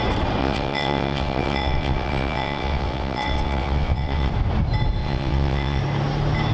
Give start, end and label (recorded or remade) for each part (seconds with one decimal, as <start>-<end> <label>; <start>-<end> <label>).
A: 0.0-0.4 recorded; 0.4-4.3 remade; 4.3-5.0 recorded; 5.0-5.8 remade; 5.8-6.5 recorded